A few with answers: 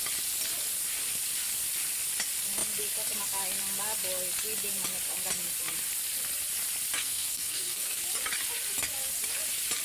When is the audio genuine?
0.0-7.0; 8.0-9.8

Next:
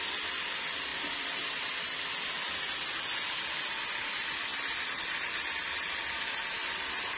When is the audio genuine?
0.0-7.2

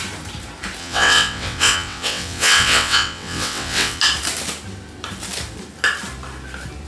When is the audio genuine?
0.0-0.8; 4.0-6.9

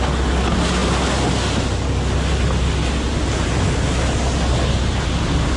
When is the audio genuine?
0.0-5.6